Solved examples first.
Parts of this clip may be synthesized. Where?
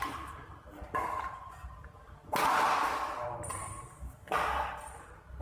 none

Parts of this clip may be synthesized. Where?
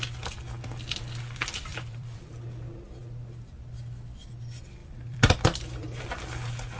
1.7-2.2 (vocoder, BigVGAN v2); 4.8-6.0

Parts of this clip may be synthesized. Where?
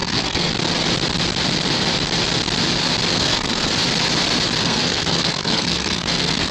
0.0-0.5 (codec, SNAC); 3.1-3.7; 4.6-6.5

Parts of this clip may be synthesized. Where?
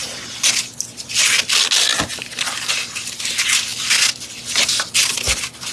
none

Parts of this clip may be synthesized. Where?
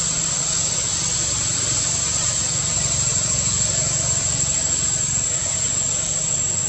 none